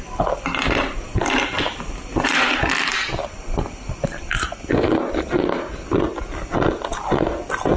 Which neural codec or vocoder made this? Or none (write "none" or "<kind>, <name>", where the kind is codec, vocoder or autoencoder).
none